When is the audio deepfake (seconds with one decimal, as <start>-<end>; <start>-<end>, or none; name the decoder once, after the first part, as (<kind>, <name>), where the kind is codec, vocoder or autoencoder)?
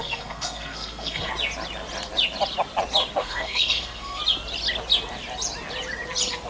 0.0-1.3 (codec, SNAC); 3.2-4.2